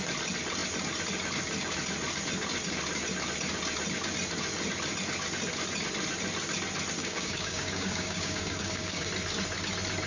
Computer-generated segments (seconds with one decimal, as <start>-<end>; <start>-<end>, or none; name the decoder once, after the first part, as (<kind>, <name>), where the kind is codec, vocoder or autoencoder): 7.0-9.1 (codec, DAC)